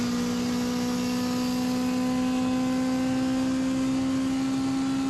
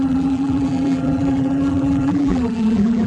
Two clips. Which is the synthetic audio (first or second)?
second